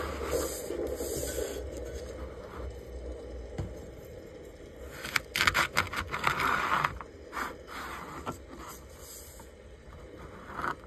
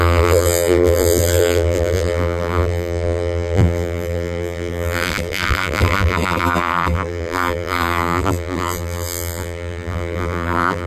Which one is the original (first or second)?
first